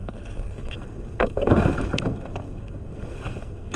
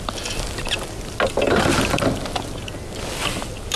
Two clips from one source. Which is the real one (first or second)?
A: second